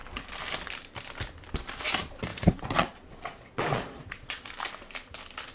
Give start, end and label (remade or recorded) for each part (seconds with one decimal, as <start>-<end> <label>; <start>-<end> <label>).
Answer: 0.0-2.3 recorded; 2.3-4.5 remade; 4.5-5.5 recorded